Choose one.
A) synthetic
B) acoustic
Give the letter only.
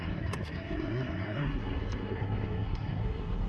A